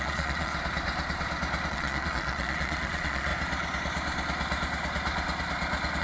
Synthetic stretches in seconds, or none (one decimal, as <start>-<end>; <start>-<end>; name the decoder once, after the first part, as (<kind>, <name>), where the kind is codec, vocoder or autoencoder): 0.0-0.5 (vocoder, Vocos); 1.7-3.3